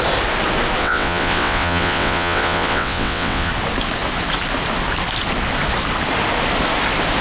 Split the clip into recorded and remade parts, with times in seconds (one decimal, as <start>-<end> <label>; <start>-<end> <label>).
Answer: 0.0-0.8 recorded; 0.8-3.5 remade; 3.5-7.2 recorded